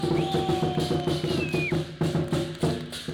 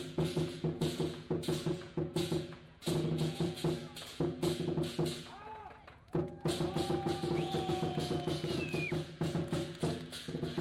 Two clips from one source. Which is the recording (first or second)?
first